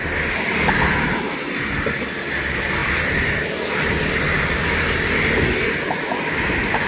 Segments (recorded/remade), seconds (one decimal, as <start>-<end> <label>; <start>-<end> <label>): 0.0-6.9 recorded